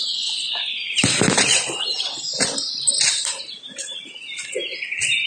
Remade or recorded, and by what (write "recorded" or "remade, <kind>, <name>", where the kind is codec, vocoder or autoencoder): recorded